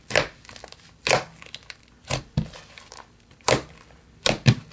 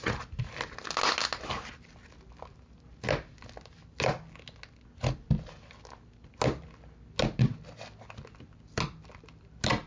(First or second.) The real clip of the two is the second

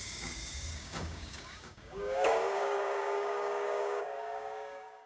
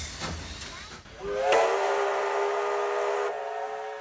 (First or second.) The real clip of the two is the second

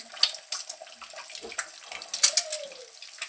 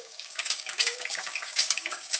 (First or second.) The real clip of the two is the first